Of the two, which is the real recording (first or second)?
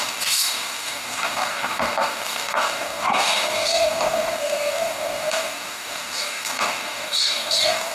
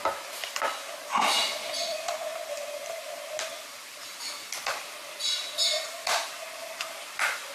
second